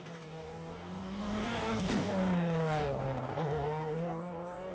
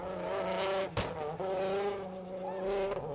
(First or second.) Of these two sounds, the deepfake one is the first